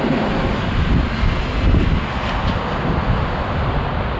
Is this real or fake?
real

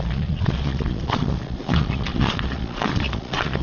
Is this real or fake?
fake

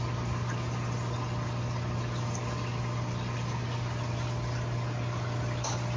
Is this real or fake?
real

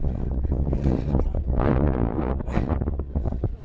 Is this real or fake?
fake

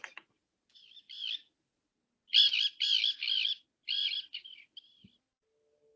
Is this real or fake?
real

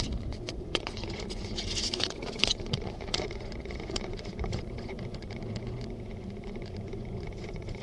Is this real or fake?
fake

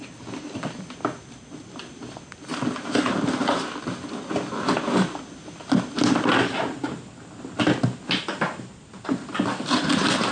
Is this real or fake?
real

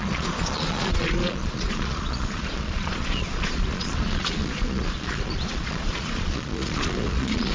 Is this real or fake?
fake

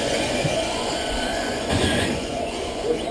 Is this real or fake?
fake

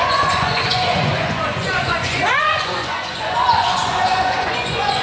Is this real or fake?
fake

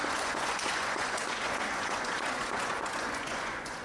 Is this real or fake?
fake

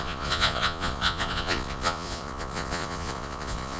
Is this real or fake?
fake